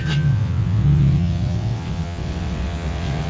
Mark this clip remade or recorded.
remade